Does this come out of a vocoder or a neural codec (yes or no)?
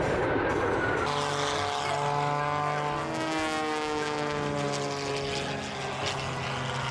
no